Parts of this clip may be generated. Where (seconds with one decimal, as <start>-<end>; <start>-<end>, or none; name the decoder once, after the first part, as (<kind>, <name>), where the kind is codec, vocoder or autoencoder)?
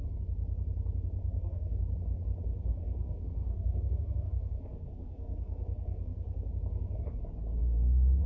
1.2-1.8 (codec, SNAC); 2.7-6.5; 7.6-8.3